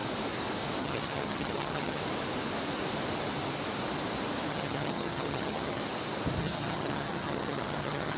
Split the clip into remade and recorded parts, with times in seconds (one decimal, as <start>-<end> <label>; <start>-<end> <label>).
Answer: 0.0-0.8 recorded; 0.8-2.0 remade; 2.0-4.5 recorded; 4.5-5.8 remade; 5.8-6.4 recorded; 6.4-8.2 remade